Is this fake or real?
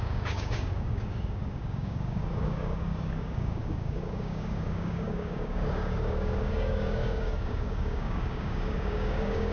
fake